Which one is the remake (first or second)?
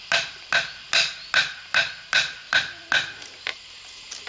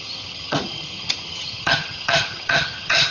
second